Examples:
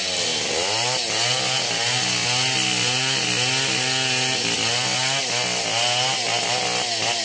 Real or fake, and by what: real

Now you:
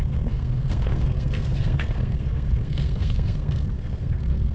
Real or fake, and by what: fake, codec, SNAC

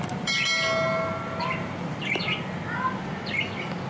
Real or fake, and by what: real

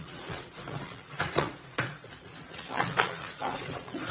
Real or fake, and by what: fake, vocoder, Vocos